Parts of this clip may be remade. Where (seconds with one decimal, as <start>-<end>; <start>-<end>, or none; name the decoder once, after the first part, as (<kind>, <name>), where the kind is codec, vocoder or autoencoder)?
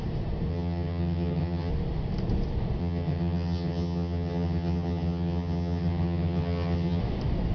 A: 0.5-1.7 (vocoder, HiFi-GAN); 2.8-7.0